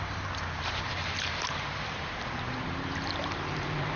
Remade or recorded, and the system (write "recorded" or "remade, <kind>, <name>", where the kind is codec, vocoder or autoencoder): remade, vocoder, BigVGAN v2